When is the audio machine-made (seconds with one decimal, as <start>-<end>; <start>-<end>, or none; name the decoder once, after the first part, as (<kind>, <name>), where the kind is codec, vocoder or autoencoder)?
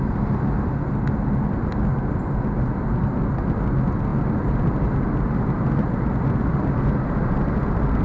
none